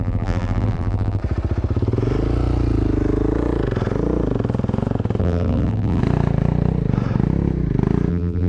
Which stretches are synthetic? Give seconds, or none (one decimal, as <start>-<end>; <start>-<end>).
0.0-1.2; 5.2-6.0; 8.1-8.5